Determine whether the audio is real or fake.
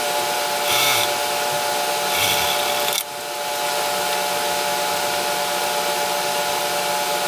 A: real